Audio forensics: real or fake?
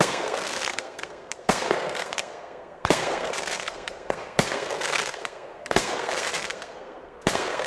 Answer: fake